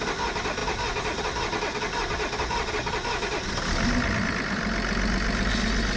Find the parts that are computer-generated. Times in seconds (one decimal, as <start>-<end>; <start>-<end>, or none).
none